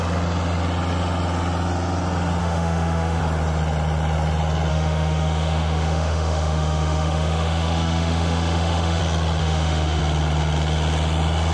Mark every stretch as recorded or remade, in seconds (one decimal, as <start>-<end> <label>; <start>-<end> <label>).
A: 0.0-2.4 recorded; 2.4-3.2 remade; 3.2-4.7 recorded; 4.7-9.0 remade; 9.0-9.4 recorded; 9.4-10.0 remade; 10.0-11.5 recorded